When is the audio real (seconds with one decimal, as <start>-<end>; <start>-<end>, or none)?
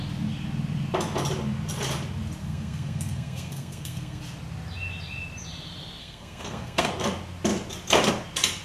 0.0-2.4; 4.2-6.0; 6.9-8.6